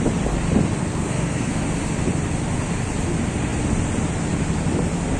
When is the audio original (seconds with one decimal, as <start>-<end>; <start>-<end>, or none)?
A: 0.0-0.8; 1.6-5.2